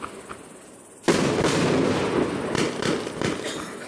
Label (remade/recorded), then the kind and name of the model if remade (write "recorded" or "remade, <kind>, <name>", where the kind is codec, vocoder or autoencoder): recorded